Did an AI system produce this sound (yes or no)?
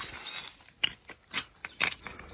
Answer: no